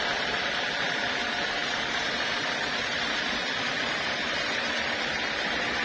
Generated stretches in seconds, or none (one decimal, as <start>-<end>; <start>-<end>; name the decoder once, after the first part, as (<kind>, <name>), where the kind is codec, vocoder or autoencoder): 1.6-5.1 (vocoder, BigVGAN v2)